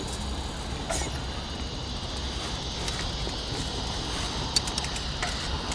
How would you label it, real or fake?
real